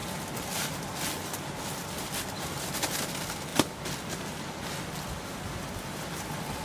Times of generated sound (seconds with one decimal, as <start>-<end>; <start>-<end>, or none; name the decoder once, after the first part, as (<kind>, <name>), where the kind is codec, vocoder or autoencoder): none